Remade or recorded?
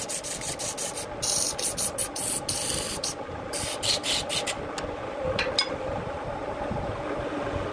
recorded